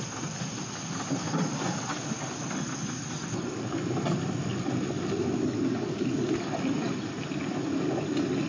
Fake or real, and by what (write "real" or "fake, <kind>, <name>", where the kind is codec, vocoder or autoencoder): real